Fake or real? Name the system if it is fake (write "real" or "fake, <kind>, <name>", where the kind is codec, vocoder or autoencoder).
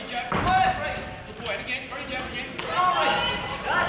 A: real